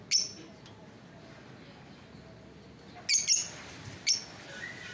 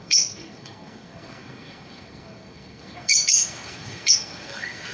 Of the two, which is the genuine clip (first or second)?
first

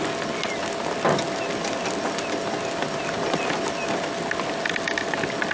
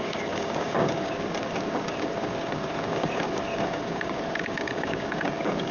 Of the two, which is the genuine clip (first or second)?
first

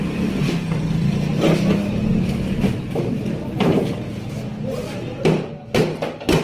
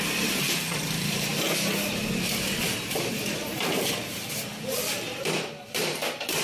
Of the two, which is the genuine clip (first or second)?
first